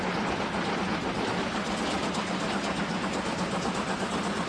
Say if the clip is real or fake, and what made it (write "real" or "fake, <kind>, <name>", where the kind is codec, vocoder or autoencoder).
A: real